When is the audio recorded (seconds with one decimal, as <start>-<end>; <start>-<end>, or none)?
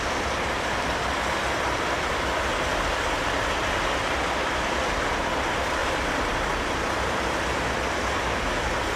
0.0-5.8; 6.3-9.0